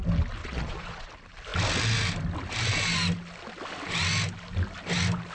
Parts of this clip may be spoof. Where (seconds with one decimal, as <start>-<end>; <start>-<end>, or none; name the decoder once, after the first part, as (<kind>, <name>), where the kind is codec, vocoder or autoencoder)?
0.4-1.1 (vocoder, Vocos)